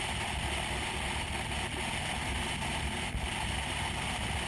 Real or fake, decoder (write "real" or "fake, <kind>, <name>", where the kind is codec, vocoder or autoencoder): real